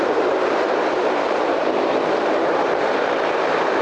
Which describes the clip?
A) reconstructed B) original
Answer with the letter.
A